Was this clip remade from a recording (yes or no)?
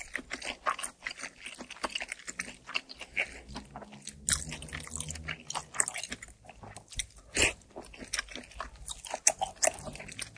no